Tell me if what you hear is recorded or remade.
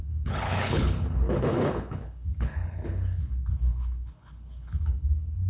remade